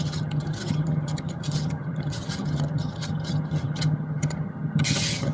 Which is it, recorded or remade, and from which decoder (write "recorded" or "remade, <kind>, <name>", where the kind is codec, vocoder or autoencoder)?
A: remade, vocoder, HiFi-GAN